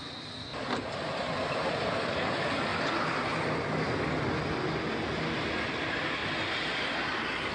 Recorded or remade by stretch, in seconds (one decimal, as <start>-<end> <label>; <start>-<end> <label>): 0.0-2.7 remade; 2.7-4.9 recorded; 4.9-6.2 remade; 6.2-7.5 recorded